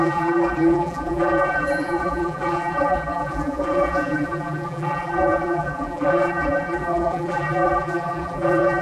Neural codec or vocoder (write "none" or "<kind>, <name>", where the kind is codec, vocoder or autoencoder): vocoder, BigVGAN v2